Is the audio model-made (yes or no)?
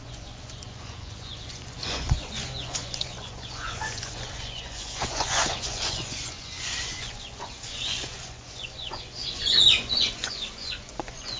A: yes